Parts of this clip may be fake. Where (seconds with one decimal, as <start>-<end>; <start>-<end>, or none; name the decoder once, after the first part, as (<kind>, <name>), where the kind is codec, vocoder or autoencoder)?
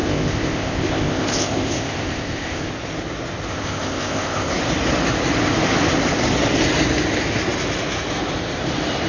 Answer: 0.0-2.7 (codec, ZipCodec); 3.5-4.5